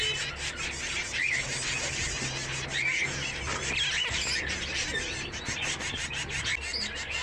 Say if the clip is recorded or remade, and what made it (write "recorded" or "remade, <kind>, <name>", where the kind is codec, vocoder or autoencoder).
recorded